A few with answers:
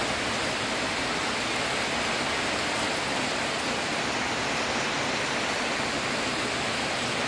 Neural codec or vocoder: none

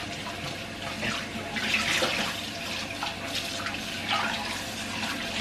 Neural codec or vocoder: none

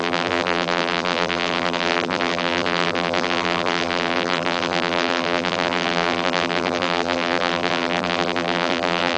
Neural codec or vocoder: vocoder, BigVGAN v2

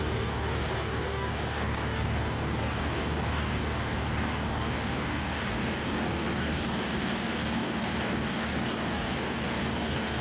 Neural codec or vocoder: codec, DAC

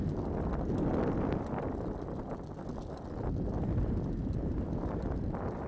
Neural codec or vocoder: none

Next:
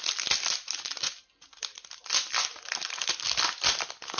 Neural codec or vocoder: none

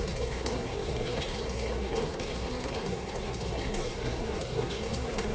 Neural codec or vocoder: codec, SNAC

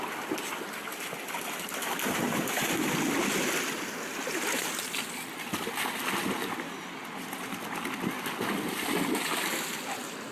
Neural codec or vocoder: none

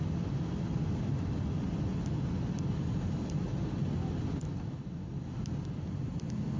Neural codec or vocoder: none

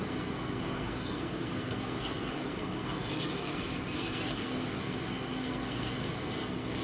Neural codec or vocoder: codec, SNAC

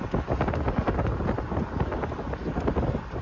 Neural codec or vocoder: none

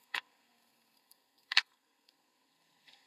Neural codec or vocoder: codec, SNAC